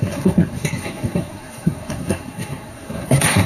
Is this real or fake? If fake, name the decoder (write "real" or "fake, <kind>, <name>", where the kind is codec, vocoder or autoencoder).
fake, codec, SNAC